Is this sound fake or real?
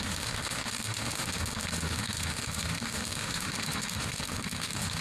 fake